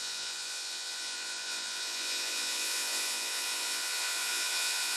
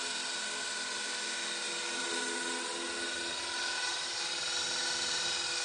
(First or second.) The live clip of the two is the second